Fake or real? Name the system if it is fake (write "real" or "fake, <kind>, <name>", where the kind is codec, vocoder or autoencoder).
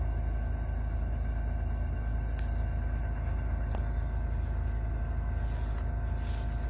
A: real